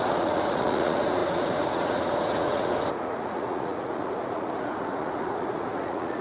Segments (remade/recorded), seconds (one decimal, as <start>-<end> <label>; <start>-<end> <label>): 0.0-6.2 remade